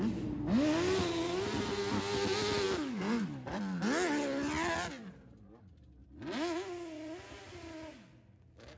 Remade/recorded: recorded